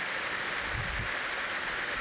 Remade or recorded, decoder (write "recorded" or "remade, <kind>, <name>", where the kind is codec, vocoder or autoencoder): recorded